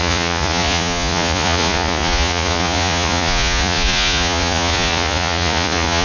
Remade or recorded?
remade